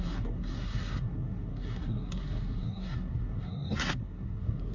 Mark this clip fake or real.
fake